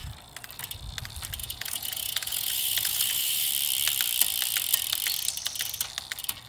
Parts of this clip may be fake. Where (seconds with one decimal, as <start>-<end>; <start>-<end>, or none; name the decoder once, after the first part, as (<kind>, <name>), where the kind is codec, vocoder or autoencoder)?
1.4-3.5 (vocoder, Vocos)